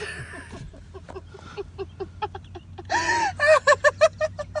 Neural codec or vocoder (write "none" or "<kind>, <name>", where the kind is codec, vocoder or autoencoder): none